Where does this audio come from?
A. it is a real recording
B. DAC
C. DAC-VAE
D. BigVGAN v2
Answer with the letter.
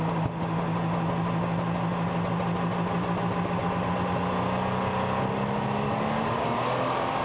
A